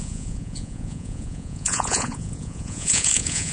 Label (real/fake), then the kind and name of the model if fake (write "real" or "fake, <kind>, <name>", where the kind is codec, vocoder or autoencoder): fake, vocoder, Vocos